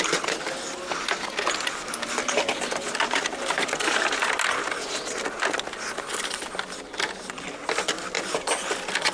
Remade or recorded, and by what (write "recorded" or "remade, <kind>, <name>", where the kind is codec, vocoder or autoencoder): recorded